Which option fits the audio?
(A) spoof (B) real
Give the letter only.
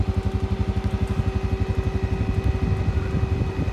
B